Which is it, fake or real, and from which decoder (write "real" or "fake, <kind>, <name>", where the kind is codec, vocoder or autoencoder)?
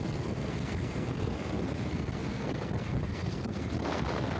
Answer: fake, codec, SNAC